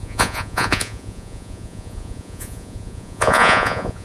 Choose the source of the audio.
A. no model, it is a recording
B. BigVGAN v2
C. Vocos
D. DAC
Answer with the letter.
C